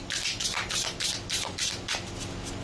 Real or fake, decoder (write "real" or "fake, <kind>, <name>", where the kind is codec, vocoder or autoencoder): real